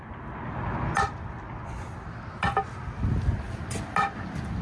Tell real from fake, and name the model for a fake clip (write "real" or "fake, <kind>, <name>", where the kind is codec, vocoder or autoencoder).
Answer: real